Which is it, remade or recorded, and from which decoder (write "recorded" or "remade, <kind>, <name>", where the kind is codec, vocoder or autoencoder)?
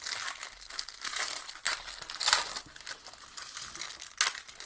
recorded